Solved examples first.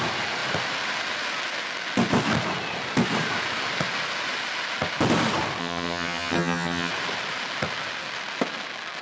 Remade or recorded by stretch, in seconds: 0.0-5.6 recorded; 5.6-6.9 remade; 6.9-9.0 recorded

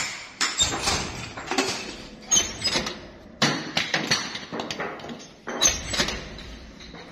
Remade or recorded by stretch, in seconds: 0.0-4.5 remade; 4.5-5.2 recorded; 5.2-7.1 remade

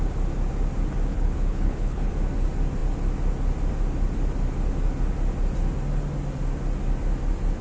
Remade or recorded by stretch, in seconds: 0.0-1.1 recorded; 1.1-2.1 remade; 2.1-7.6 recorded